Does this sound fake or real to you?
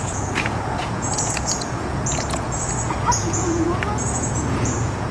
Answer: fake